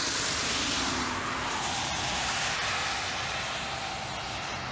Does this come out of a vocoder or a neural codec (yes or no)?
no